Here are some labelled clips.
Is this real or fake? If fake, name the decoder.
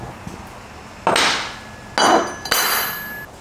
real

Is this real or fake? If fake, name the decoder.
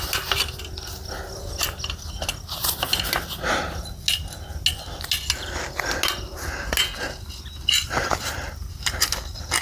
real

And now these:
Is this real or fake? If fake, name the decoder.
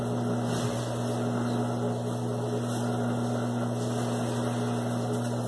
real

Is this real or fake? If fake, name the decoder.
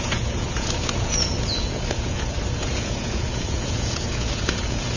fake, vocoder, Vocos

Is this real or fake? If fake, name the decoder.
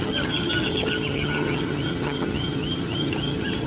fake, vocoder, HiFi-GAN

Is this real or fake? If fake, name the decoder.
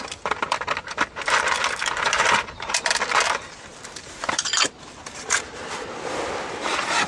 fake, vocoder, BigVGAN v2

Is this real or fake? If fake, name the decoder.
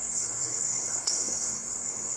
fake, codec, SNAC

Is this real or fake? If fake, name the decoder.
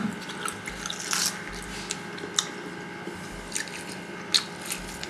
real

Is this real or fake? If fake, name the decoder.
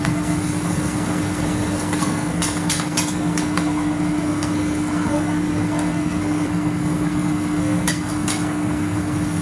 fake, codec, SNAC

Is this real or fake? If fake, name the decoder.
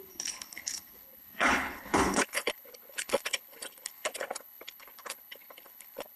fake, codec, HILCodec